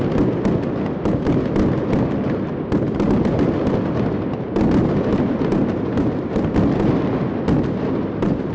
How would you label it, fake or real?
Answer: real